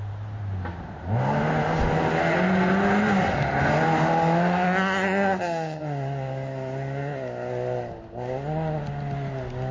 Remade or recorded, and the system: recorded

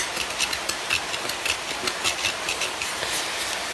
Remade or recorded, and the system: recorded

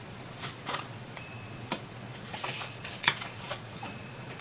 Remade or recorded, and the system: remade, vocoder, Vocos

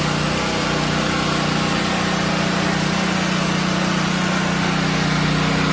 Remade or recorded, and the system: recorded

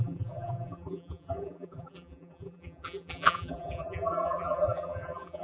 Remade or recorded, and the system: remade, vocoder, BigVGAN v2